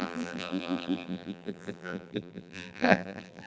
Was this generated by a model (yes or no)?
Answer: yes